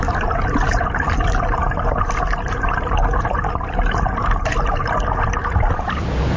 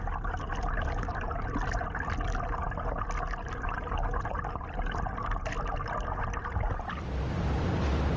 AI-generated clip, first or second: first